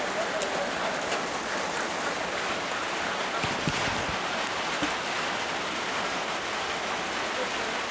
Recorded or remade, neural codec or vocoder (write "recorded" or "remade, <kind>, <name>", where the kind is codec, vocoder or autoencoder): recorded